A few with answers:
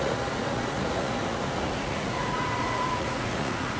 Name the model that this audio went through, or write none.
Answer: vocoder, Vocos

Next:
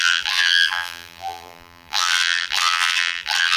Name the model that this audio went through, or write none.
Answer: vocoder, BigVGAN v2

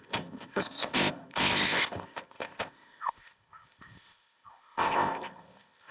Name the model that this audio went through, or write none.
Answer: codec, ZipCodec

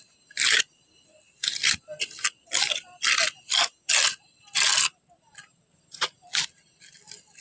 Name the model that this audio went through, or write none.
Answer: none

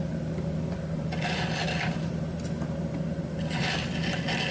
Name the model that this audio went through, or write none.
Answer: none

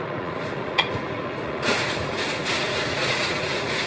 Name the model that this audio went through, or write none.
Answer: vocoder, Vocos